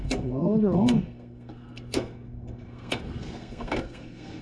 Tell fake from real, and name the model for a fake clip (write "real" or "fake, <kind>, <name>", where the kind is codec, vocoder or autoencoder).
fake, codec, SNAC